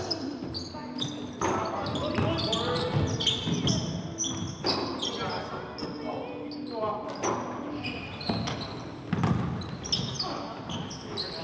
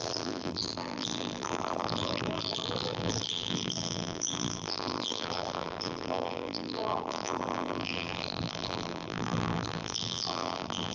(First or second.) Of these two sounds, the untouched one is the first